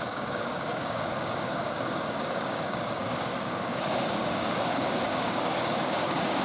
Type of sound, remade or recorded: remade